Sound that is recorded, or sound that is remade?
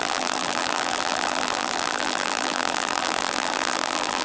remade